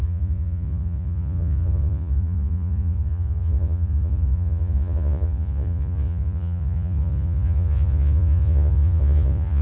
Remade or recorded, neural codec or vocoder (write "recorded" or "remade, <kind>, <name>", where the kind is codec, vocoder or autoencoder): remade, vocoder, Vocos